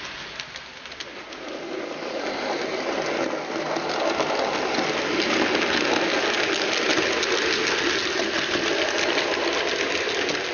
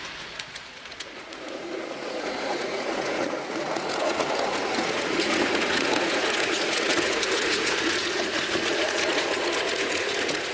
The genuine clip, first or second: first